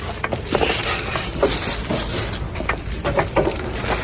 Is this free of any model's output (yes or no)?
yes